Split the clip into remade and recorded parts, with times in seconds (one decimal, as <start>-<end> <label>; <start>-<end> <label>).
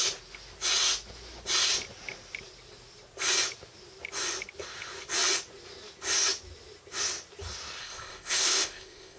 0.0-7.8 recorded; 7.8-9.2 remade